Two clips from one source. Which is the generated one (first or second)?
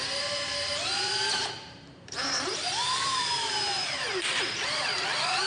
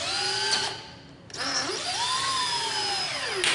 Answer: first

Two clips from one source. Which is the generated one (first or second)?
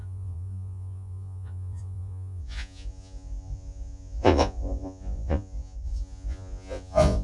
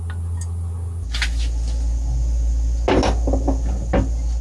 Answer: first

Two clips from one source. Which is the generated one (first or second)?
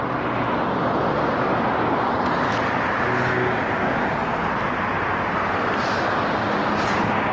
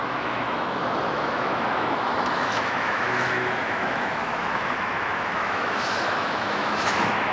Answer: second